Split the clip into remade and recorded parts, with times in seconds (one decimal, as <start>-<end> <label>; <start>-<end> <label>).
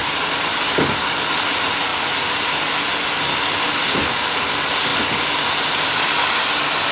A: 0.0-6.9 recorded